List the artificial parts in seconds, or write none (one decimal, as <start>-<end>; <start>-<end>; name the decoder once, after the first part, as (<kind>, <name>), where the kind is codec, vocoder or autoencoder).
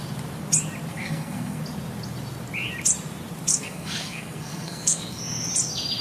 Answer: 0.9-1.6 (codec, SNAC); 3.5-5.2